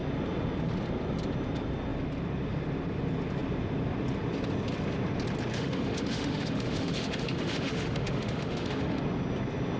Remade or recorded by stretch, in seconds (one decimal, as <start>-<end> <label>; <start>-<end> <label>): 0.0-5.5 recorded; 5.5-9.0 remade; 9.0-9.8 recorded